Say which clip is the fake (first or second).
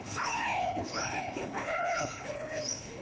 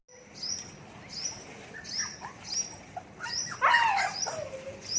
first